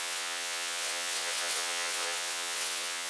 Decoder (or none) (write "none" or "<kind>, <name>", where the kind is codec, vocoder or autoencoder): vocoder, WaveNeXt